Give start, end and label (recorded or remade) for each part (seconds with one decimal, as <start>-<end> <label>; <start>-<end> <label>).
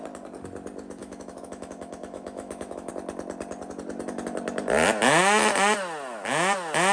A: 0.0-1.0 recorded; 1.0-2.9 remade; 2.9-6.9 recorded